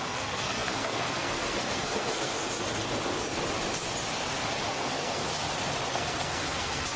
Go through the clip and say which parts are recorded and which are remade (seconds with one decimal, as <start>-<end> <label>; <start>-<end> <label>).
0.0-2.3 remade; 2.3-4.7 recorded; 4.7-5.2 remade; 5.2-5.9 recorded; 5.9-7.0 remade